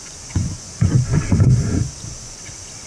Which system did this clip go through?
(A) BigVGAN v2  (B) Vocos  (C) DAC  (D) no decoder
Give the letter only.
B